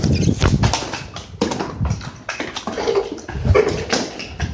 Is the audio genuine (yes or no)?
yes